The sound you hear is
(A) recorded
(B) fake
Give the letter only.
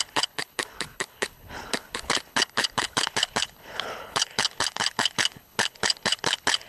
B